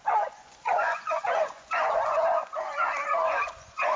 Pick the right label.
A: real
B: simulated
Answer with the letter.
B